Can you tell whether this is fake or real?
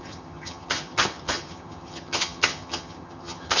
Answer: fake